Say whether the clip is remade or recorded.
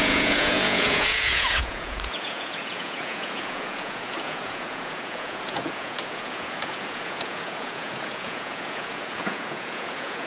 remade